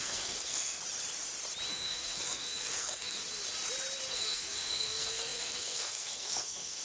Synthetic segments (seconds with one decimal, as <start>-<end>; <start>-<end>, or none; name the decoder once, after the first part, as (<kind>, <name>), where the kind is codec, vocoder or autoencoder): 0.0-0.8 (codec, SNAC); 1.7-3.2; 4.1-6.8